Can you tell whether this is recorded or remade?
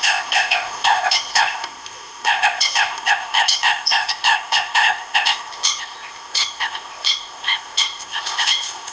remade